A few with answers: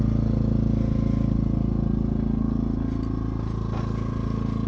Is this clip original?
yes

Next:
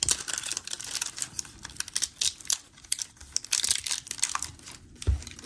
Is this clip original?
yes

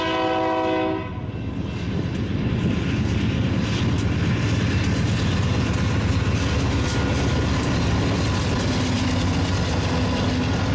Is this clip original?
yes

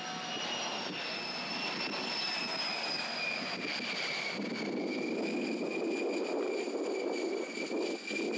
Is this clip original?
yes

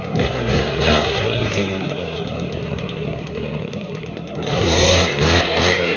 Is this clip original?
no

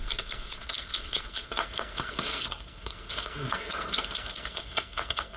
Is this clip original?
no